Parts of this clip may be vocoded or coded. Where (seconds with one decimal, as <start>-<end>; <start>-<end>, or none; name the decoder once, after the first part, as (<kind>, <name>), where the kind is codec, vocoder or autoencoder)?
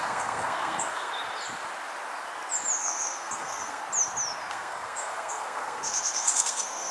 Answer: 0.0-1.1 (codec, SNAC); 2.8-3.8; 4.5-6.9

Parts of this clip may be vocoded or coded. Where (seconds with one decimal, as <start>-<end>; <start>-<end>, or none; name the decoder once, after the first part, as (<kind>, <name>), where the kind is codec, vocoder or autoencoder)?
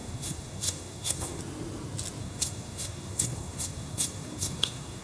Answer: 0.0-1.4 (codec, SNAC); 2.2-5.0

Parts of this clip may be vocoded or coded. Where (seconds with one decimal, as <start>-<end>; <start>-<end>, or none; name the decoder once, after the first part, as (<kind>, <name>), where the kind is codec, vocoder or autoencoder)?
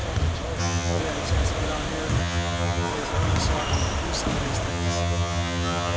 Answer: 0.6-1.0 (vocoder, HiFi-GAN); 2.2-2.9; 4.7-6.0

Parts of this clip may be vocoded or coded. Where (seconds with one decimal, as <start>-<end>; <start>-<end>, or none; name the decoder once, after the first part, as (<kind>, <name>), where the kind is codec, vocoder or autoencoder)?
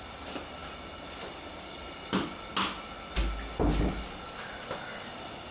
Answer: none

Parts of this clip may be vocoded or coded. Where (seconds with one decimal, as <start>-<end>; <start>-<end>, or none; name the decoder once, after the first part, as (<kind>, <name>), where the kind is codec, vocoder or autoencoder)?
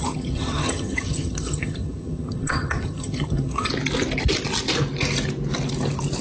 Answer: 0.0-3.7 (vocoder, HiFi-GAN)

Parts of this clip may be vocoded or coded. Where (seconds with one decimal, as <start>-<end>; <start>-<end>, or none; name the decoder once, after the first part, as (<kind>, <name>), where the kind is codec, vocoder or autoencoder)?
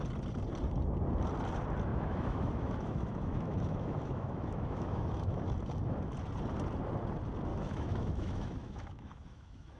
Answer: 1.9-5.5 (autoencoder, DAC-VAE); 7.5-9.8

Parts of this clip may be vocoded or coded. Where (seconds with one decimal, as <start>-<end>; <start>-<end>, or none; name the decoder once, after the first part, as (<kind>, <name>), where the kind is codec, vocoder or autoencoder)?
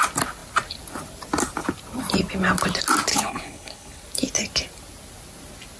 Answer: 3.1-4.0 (codec, HILCodec)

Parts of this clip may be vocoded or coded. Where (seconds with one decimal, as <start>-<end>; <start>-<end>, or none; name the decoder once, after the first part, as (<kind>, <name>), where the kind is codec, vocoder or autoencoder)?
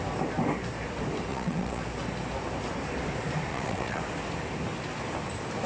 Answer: 1.3-1.8 (vocoder, WaveNeXt); 3.5-4.0